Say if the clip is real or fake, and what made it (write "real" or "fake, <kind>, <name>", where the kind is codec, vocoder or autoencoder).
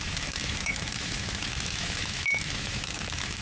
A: fake, autoencoder, DAC-VAE